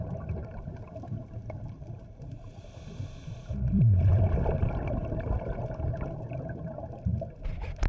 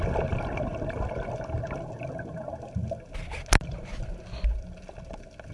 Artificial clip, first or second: first